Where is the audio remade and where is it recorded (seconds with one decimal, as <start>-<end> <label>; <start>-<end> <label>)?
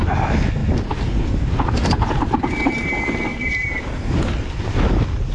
0.0-0.6 recorded; 0.6-2.9 remade; 2.9-3.3 recorded; 3.3-3.9 remade; 3.9-5.3 recorded